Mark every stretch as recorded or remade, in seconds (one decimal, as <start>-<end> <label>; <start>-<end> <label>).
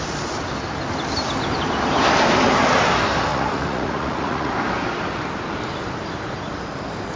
0.0-3.3 recorded; 3.3-4.5 remade; 4.5-7.2 recorded